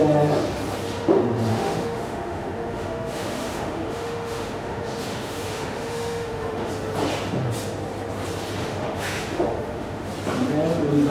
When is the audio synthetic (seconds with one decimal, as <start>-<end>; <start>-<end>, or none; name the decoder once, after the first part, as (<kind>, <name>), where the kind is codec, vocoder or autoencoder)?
1.5-6.7 (autoencoder, DAC-VAE); 8.6-10.1